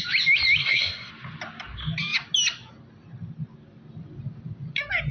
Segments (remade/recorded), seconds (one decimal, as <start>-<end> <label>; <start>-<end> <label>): 0.0-0.6 recorded; 0.6-1.1 remade; 1.1-5.1 recorded